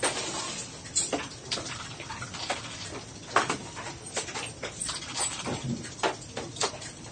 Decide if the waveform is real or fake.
real